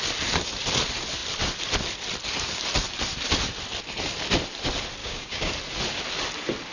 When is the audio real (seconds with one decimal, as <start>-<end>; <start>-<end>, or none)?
0.0-5.0; 5.5-6.7